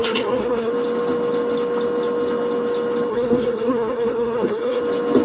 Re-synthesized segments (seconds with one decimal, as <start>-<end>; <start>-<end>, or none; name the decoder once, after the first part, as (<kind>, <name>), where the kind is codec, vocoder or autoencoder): 0.0-0.7 (codec, SNAC); 3.1-4.8